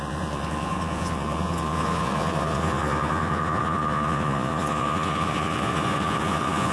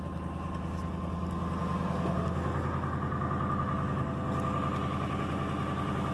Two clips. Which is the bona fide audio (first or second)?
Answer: second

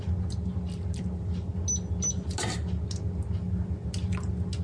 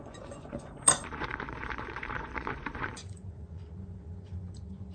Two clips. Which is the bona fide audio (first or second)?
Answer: first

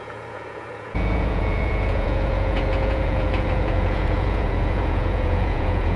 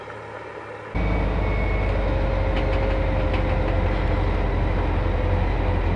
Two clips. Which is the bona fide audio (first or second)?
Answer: second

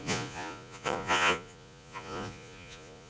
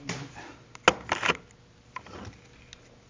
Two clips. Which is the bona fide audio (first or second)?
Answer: second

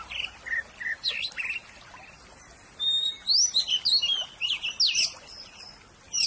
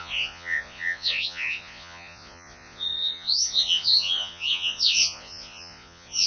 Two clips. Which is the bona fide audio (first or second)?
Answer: first